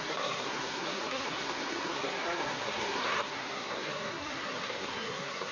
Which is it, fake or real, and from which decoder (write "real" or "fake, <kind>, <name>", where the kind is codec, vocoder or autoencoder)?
fake, codec, SNAC